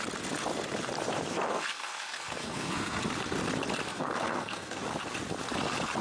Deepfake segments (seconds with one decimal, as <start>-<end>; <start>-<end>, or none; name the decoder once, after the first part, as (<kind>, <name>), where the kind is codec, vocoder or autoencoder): 1.5-3.0 (codec, SNAC); 3.9-4.8